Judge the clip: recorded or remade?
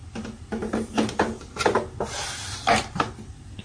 recorded